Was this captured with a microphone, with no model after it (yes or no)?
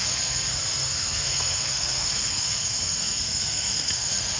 no